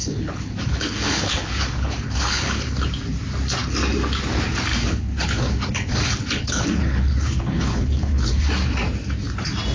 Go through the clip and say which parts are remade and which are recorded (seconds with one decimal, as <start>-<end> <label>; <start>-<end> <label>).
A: 0.0-2.9 remade; 2.9-4.7 recorded; 4.7-8.5 remade; 8.5-9.7 recorded